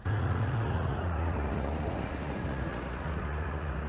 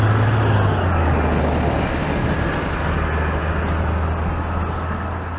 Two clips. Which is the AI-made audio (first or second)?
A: first